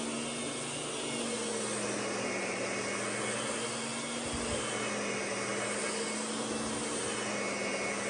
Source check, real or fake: real